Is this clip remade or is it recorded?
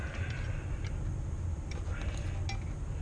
recorded